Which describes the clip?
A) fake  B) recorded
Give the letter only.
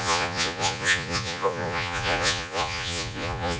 A